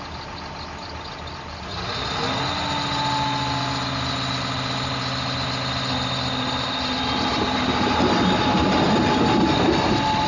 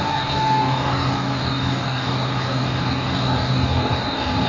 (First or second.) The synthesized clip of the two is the second